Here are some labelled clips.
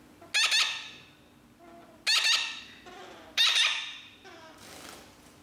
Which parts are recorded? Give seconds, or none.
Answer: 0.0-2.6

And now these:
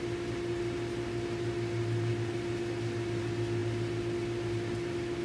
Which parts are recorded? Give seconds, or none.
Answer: 0.0-5.2

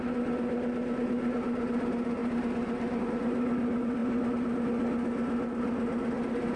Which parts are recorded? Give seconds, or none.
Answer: 0.0-6.6